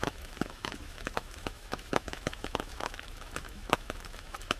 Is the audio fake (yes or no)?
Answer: yes